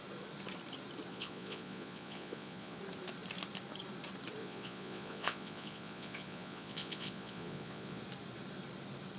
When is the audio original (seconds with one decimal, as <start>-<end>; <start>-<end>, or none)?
0.0-1.1; 2.8-4.4; 8.0-9.2